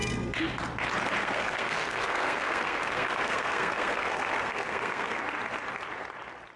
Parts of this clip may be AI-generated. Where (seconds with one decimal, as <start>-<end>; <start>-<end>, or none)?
1.2-5.2